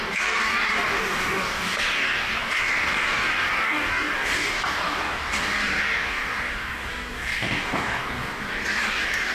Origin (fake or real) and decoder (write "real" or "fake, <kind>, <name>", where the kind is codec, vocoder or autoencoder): fake, codec, DAC